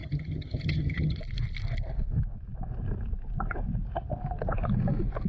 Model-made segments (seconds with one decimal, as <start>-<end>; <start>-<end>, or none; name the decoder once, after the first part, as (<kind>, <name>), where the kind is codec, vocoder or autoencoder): 0.0-1.2 (vocoder, HiFi-GAN)